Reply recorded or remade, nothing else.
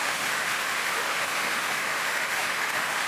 remade